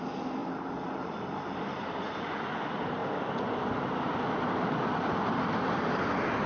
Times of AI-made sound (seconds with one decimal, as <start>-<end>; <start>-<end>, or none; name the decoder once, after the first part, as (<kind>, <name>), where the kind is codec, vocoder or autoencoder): 0.4-2.2 (vocoder, BigVGAN v2); 3.0-4.8